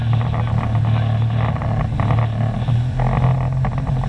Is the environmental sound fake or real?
real